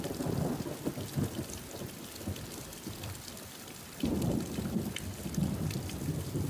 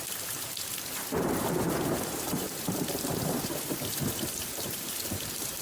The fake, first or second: second